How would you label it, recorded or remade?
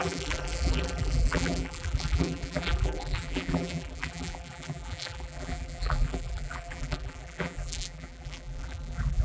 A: remade